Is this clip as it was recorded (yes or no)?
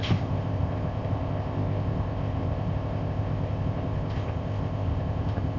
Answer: no